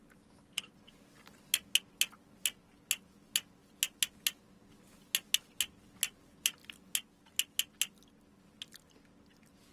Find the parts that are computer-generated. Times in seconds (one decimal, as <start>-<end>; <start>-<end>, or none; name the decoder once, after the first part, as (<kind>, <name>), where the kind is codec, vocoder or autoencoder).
none